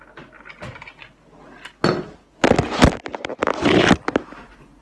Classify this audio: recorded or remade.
recorded